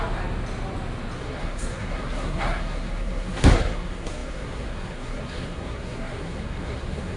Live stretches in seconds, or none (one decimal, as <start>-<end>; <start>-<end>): 0.0-1.2

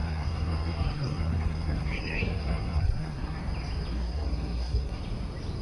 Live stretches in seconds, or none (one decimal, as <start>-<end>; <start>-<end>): 3.4-3.9; 5.0-5.6

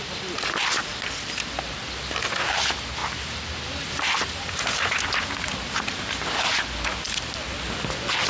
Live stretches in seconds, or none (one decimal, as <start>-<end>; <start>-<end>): 0.0-8.3

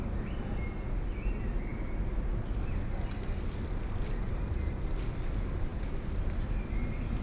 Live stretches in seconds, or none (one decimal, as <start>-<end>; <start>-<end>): 0.0-7.2